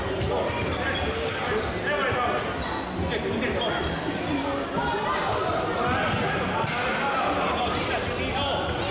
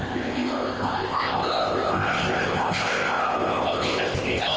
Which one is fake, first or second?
second